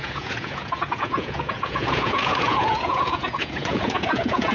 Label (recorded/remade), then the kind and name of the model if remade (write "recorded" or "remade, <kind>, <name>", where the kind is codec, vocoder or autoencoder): remade, vocoder, Vocos